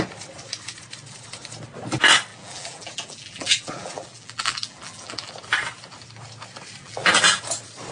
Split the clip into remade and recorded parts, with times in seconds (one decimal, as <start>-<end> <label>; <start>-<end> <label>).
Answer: 0.0-2.3 recorded; 2.3-5.3 remade; 5.3-6.8 recorded; 6.8-7.4 remade; 7.4-7.9 recorded

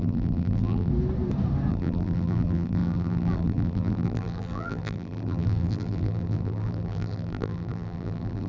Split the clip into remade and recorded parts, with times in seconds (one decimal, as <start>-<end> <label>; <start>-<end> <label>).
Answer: 0.0-0.9 remade; 0.9-1.7 recorded; 1.7-8.5 remade

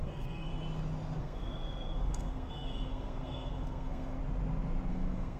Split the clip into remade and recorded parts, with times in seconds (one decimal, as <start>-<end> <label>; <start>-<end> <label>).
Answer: 0.0-0.5 remade; 0.5-1.2 recorded; 1.2-4.2 remade; 4.2-4.9 recorded; 4.9-5.4 remade

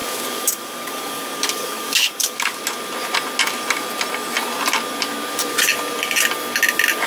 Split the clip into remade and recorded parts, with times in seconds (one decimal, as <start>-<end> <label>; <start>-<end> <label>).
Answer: 0.0-2.6 remade; 2.6-7.1 recorded